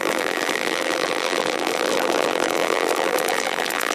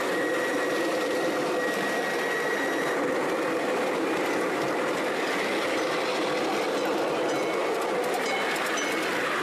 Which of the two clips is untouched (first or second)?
second